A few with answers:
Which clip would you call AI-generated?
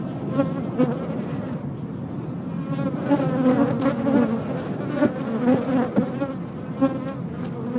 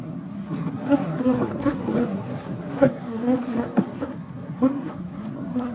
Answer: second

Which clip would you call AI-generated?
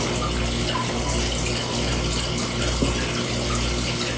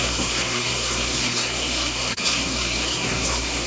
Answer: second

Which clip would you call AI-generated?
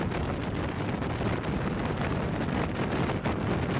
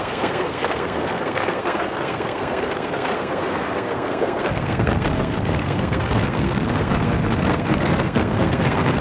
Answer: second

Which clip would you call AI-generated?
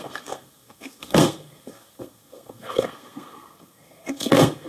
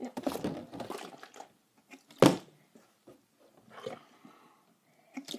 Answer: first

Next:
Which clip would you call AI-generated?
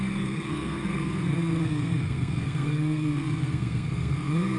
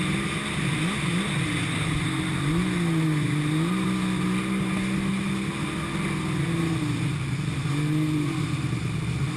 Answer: first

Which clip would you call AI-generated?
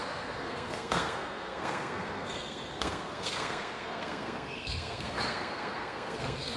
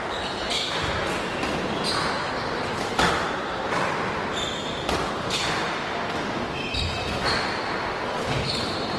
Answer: first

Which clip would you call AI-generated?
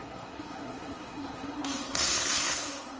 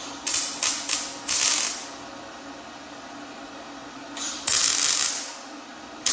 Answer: first